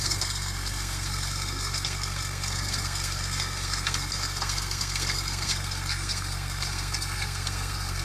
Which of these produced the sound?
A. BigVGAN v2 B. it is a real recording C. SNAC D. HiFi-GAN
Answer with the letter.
C